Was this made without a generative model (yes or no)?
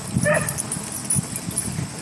yes